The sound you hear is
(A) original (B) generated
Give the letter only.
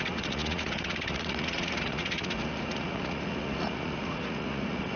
B